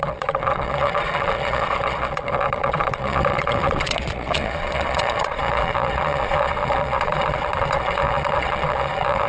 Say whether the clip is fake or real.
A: fake